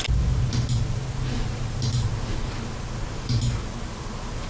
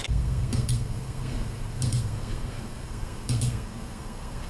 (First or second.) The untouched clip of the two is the first